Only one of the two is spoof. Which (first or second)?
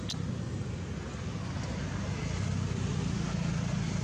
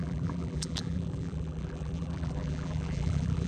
second